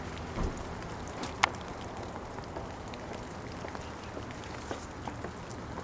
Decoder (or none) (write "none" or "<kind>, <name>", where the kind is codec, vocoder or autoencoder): none